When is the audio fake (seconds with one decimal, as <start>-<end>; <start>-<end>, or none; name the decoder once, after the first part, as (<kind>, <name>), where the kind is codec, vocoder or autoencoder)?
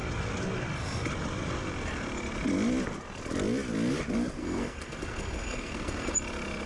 4.4-6.1 (codec, SNAC)